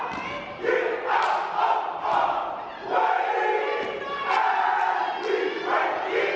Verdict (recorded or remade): recorded